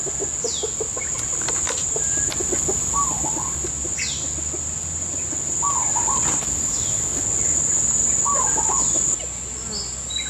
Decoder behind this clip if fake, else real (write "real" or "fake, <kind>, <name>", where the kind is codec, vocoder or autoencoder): real